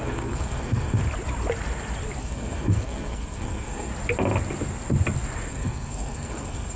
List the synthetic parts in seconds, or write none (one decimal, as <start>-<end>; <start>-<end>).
0.0-1.0; 2.2-3.9; 5.5-6.8